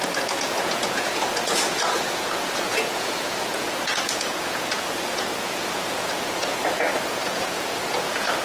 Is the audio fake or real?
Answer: fake